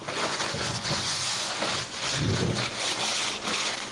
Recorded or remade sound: remade